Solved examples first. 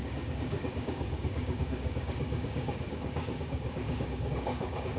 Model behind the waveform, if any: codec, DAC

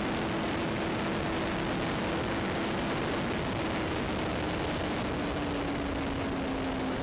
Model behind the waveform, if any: none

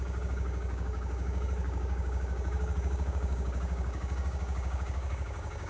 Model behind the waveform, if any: codec, DAC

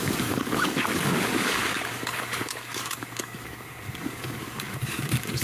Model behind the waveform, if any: codec, DAC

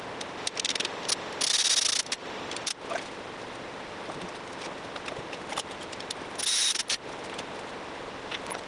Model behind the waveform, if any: none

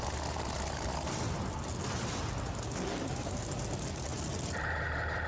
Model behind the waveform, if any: none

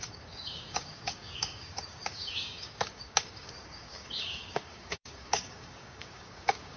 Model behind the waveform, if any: codec, DAC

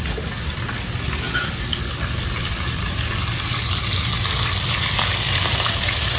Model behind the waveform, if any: none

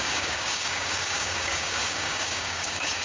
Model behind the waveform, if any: codec, DAC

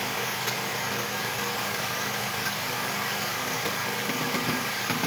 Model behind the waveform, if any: codec, DAC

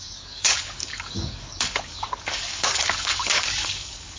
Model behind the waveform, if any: codec, DAC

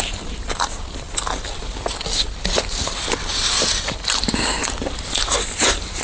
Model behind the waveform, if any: none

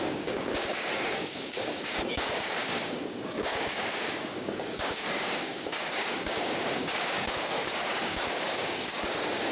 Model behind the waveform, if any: codec, DAC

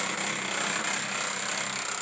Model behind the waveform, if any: none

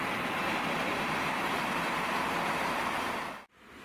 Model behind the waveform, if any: none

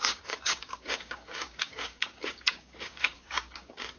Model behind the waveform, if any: codec, DAC